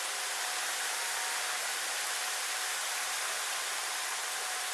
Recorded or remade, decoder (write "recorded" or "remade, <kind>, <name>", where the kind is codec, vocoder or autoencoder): recorded